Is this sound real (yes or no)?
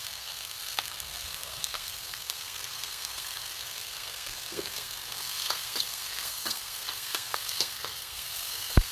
no